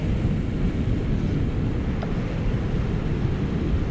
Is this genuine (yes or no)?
yes